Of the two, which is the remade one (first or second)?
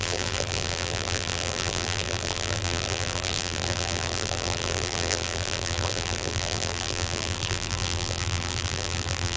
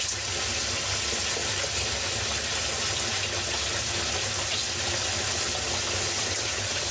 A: first